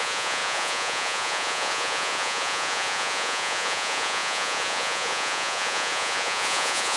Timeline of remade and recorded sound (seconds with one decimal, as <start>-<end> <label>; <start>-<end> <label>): 0.0-7.0 remade